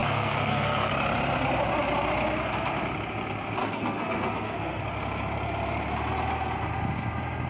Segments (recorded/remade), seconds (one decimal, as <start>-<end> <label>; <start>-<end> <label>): 0.0-0.9 remade; 0.9-3.6 recorded; 3.6-4.8 remade; 4.8-7.5 recorded